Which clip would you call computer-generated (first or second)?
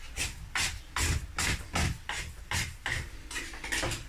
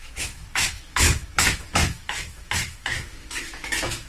second